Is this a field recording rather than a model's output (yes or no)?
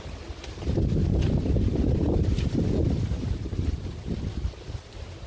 yes